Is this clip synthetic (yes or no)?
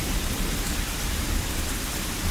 no